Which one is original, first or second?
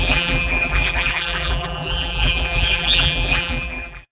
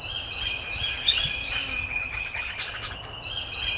second